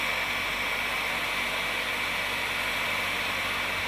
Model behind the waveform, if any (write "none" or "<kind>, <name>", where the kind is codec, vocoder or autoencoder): none